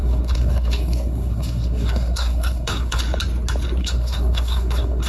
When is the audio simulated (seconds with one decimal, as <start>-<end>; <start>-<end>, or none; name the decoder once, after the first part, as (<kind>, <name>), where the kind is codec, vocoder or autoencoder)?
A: 0.0-3.0 (codec, SNAC); 3.8-5.1